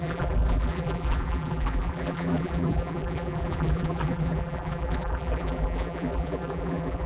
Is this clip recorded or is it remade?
remade